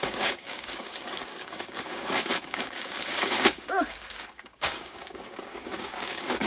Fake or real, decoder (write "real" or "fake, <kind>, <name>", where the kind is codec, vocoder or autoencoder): fake, codec, DAC